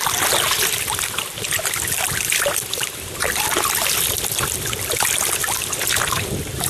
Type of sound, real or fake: real